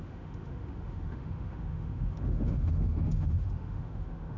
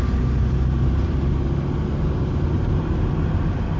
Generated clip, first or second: first